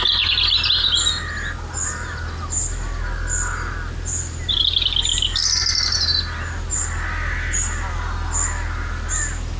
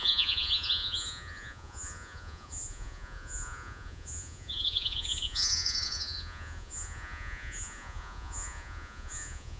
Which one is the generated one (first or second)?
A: second